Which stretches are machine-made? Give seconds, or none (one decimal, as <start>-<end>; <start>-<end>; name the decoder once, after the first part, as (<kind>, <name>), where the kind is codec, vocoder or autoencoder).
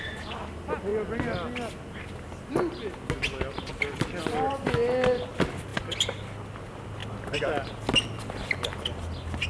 none